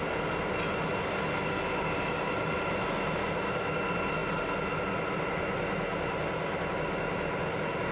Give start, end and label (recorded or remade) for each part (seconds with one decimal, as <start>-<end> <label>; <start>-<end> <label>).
0.0-7.9 recorded